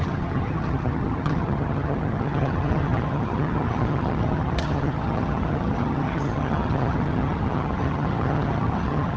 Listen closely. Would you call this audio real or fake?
fake